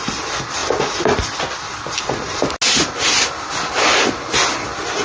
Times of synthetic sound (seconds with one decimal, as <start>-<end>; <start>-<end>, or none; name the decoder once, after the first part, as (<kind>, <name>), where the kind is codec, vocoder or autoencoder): none